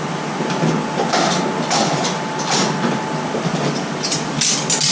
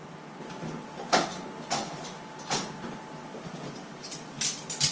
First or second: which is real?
second